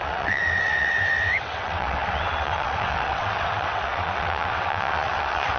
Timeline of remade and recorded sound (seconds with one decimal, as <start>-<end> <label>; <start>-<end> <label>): 0.0-5.6 remade